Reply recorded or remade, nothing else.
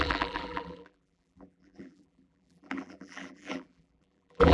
remade